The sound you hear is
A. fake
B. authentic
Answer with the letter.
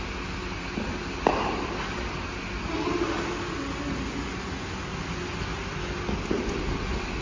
B